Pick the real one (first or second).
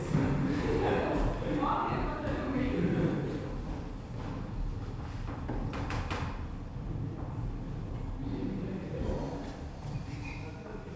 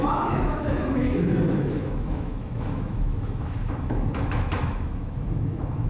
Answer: first